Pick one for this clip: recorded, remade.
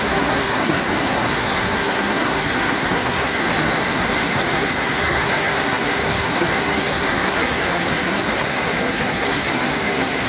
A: remade